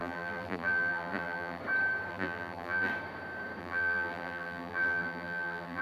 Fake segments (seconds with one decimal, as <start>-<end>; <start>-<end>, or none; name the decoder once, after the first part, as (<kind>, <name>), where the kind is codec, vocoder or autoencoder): 0.0-1.6 (vocoder, BigVGAN v2); 2.1-2.9; 3.6-5.8